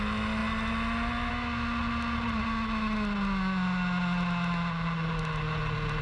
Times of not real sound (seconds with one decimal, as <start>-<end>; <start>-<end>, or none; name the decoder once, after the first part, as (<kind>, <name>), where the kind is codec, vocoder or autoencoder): none